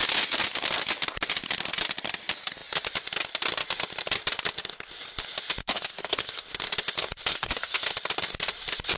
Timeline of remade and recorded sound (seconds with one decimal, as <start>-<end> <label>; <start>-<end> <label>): 0.0-5.6 recorded; 5.6-6.4 remade; 6.4-7.3 recorded; 7.3-7.9 remade; 7.9-9.0 recorded